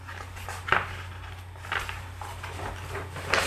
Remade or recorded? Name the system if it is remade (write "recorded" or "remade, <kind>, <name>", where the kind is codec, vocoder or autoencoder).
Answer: recorded